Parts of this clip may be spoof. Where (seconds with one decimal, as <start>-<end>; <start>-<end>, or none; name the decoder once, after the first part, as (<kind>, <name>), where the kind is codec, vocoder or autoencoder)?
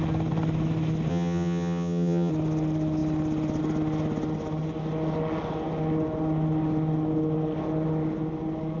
1.1-2.3 (vocoder, HiFi-GAN)